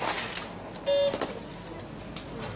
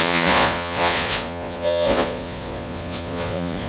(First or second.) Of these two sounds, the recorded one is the first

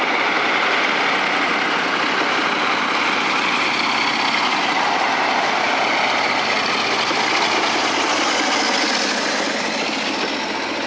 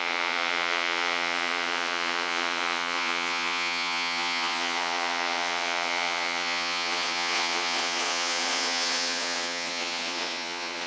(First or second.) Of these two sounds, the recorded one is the first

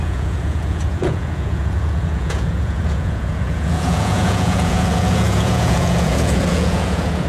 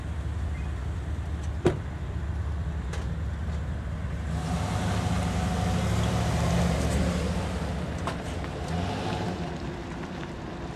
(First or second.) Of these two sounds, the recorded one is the second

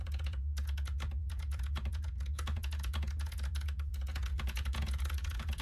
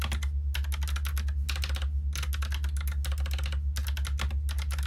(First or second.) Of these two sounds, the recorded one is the second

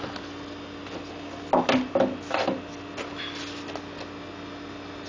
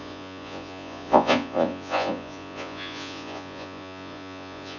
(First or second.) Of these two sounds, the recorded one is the first